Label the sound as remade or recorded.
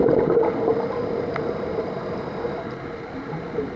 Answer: recorded